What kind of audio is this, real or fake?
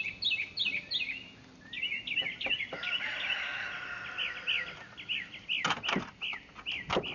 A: real